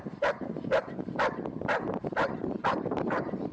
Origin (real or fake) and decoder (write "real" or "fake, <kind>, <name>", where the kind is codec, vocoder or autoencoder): fake, vocoder, BigVGAN v2